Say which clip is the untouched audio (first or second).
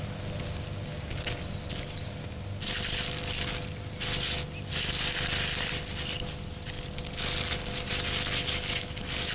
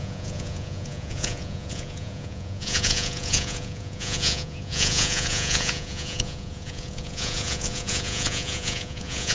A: first